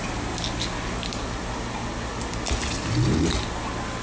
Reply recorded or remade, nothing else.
recorded